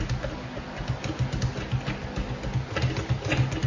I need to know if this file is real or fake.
real